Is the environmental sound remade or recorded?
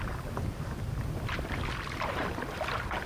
recorded